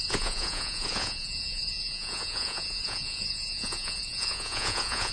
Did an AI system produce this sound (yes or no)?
yes